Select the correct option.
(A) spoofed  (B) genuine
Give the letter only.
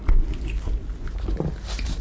B